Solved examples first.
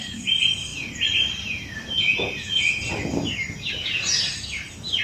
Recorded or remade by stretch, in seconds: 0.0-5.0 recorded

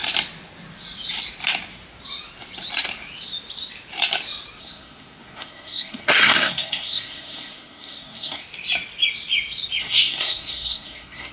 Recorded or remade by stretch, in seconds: 0.0-4.6 recorded; 4.6-8.4 remade; 8.4-9.8 recorded; 9.8-11.3 remade